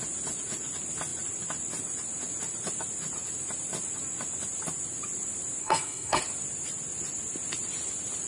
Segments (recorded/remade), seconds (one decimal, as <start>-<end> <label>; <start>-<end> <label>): 0.0-5.6 recorded; 5.6-6.2 remade; 6.2-8.3 recorded